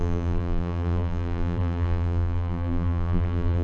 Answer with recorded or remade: remade